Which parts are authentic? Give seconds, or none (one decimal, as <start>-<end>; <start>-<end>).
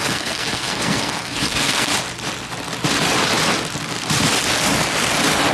1.9-5.5